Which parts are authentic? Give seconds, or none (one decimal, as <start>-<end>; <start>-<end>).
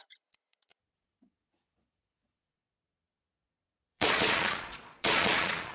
none